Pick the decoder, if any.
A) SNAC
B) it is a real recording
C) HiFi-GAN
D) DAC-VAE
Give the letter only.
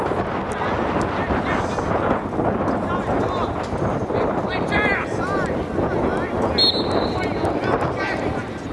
B